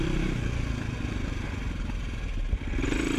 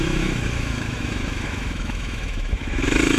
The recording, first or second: first